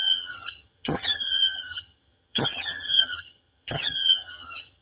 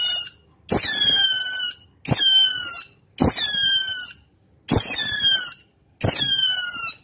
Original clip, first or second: second